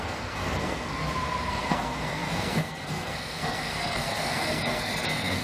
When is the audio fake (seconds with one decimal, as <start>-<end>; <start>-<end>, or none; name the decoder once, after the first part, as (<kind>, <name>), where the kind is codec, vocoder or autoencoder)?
0.0-1.0 (codec, SNAC); 1.5-5.4

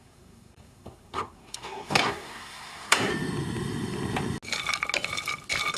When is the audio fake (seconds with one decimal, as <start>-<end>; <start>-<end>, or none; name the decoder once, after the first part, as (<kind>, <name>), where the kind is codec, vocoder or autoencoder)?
0.0-3.1 (codec, SNAC)

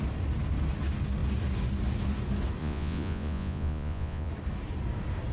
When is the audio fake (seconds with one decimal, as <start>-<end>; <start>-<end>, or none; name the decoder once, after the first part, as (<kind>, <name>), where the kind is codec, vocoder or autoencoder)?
2.6-4.3 (vocoder, Vocos)

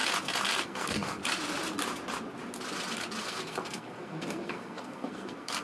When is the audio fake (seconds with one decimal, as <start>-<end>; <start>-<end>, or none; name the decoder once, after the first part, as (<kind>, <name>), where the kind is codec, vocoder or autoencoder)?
0.6-1.2 (codec, SNAC); 3.2-5.6

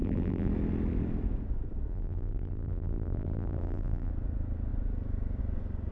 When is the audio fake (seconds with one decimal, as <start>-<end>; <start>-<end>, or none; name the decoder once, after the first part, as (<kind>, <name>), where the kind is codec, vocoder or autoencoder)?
0.0-0.5 (vocoder, BigVGAN v2); 1.9-4.1

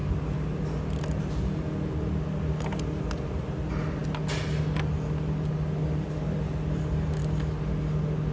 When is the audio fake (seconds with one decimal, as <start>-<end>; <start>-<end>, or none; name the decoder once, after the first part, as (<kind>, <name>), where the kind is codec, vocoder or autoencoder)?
none

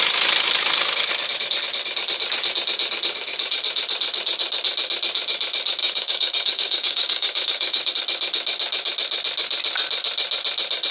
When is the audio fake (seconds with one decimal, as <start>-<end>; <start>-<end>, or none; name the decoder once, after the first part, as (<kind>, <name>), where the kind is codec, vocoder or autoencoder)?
5.8-7.9 (codec, DAC)